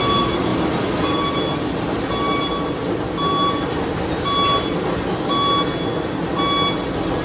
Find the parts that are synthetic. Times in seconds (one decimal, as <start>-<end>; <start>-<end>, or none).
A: none